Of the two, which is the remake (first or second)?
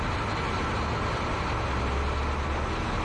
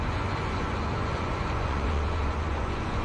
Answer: second